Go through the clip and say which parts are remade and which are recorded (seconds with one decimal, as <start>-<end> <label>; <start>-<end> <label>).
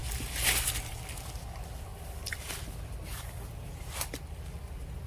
0.0-5.1 recorded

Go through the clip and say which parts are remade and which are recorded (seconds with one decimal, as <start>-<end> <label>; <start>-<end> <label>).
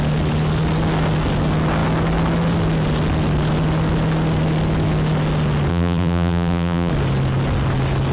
0.0-5.7 recorded; 5.7-6.9 remade; 6.9-8.1 recorded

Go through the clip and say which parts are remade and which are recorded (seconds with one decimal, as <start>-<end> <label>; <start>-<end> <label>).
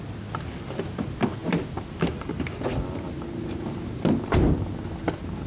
0.0-5.5 recorded